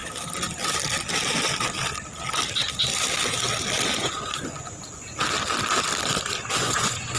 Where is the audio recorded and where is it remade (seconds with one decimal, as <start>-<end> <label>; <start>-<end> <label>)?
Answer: 0.0-4.0 recorded; 4.0-5.1 remade; 5.1-6.5 recorded; 6.5-7.2 remade